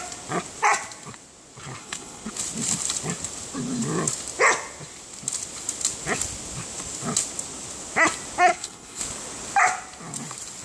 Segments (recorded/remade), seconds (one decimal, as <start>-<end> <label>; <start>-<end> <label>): 0.0-1.8 recorded; 1.8-2.3 remade; 2.3-8.5 recorded; 8.5-9.0 remade; 9.0-10.6 recorded